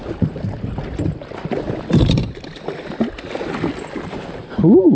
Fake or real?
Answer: real